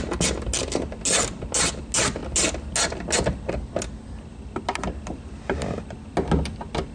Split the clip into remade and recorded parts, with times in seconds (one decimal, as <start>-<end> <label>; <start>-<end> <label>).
0.0-6.9 recorded